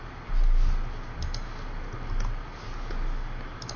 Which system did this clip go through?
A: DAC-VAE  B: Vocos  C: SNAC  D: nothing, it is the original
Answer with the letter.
D